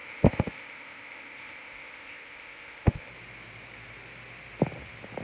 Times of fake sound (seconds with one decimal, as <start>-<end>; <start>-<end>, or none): 0.0-3.1